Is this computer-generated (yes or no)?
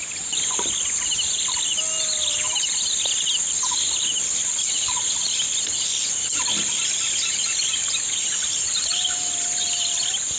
no